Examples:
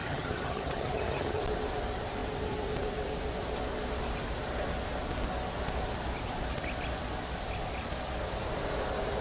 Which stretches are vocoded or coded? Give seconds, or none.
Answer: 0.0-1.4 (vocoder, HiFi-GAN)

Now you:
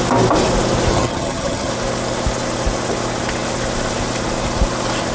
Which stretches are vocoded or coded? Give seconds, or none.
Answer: 0.9-1.7 (vocoder, HiFi-GAN)